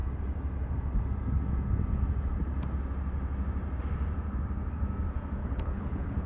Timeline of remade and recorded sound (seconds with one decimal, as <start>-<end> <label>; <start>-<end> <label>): 0.0-5.4 recorded; 5.4-6.3 remade